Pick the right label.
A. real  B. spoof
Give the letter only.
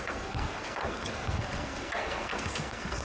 B